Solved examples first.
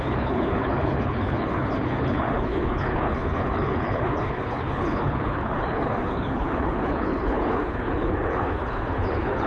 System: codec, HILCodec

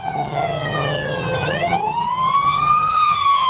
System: vocoder, HiFi-GAN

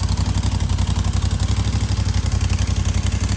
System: none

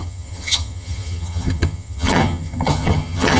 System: vocoder, HiFi-GAN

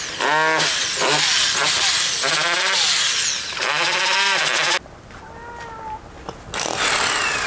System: none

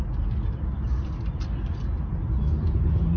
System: none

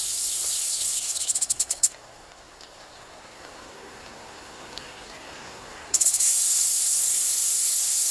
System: codec, SNAC